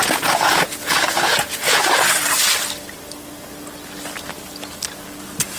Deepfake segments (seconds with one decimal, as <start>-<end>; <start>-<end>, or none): 0.0-2.2